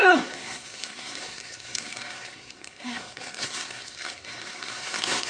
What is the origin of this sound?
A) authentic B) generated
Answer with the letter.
B